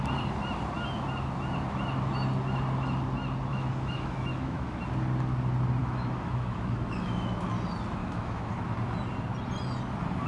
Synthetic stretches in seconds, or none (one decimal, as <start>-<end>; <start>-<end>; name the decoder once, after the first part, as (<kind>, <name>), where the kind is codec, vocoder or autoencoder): 3.5-4.8 (autoencoder, DAC-VAE); 5.8-7.5; 8.0-8.5